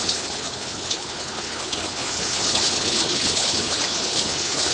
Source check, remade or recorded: remade